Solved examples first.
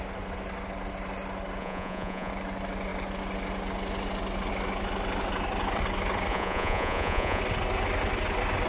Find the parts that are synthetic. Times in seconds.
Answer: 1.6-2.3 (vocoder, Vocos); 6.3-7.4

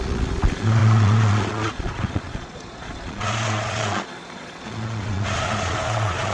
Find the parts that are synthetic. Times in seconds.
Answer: 0.0-6.3 (vocoder, Vocos)

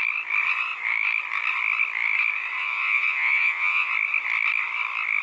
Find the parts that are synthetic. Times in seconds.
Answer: 2.6-3.9 (vocoder, Vocos)

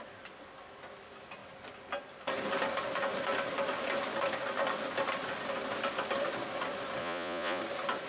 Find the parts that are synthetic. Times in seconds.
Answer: 7.0-7.6 (vocoder, Vocos)

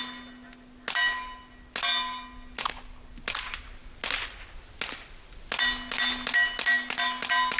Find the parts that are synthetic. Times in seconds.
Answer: none